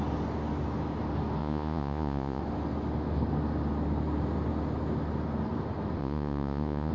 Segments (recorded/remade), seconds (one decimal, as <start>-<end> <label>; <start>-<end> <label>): 0.0-1.4 recorded; 1.4-2.4 remade; 2.4-6.0 recorded; 6.0-6.9 remade